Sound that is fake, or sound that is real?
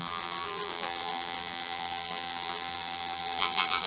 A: fake